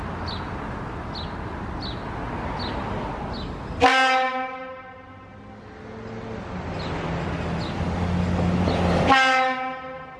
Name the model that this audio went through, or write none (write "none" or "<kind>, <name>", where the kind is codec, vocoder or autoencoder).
none